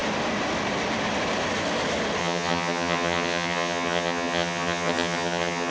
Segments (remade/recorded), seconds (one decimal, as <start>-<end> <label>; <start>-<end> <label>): 0.0-2.2 recorded; 2.2-5.7 remade